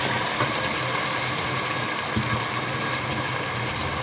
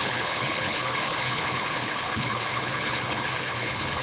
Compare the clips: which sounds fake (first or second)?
second